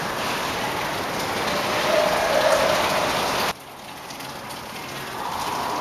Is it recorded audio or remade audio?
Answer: recorded